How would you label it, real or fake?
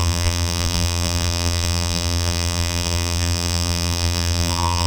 fake